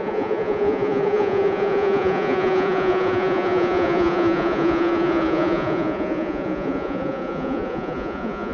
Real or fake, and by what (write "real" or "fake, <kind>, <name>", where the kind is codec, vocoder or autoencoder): fake, vocoder, Vocos